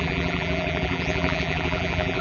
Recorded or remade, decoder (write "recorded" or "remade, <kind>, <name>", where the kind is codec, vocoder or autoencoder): remade, vocoder, BigVGAN v2